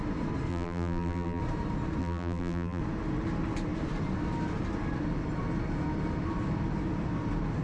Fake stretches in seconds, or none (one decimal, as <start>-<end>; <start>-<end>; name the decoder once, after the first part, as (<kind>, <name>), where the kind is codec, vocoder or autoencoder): 0.5-1.4 (vocoder, BigVGAN v2); 2.0-2.8